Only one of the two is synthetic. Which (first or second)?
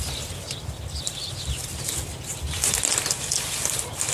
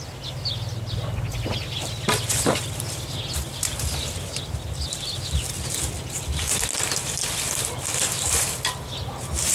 first